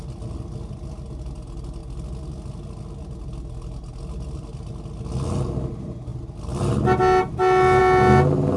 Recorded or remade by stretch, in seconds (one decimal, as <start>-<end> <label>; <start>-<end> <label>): 0.0-8.6 recorded